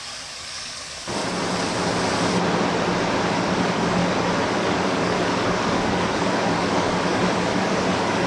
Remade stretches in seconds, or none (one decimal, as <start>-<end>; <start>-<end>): 0.0-1.2; 3.3-4.0; 4.5-8.3